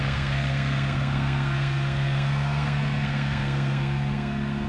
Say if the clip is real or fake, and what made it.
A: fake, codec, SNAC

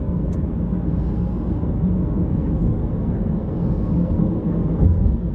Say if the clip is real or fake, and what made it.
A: fake, codec, SNAC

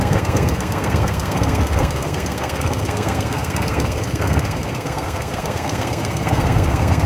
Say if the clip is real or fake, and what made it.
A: fake, codec, SNAC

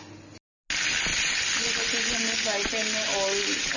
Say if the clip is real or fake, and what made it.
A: real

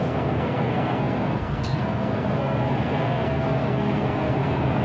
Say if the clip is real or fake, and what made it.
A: fake, codec, SNAC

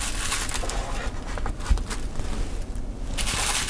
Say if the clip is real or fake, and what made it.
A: real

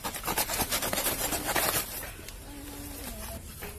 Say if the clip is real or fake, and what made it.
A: real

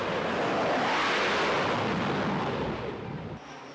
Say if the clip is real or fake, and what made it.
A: real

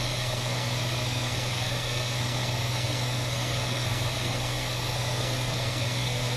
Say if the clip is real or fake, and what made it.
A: fake, codec, SNAC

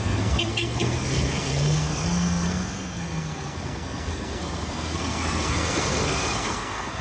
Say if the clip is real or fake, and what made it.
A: fake, codec, SNAC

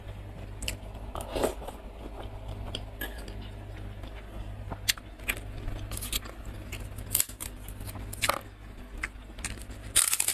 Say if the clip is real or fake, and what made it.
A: real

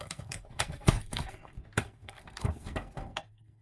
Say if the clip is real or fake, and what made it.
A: fake, codec, SNAC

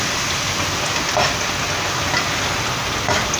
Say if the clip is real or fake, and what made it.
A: real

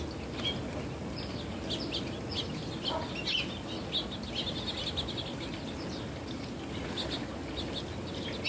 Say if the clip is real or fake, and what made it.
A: real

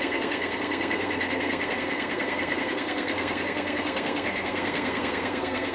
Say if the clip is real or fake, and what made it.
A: fake, codec, SNAC